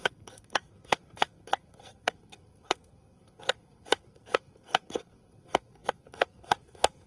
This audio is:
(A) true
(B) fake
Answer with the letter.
B